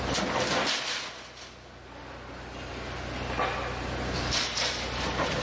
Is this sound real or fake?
real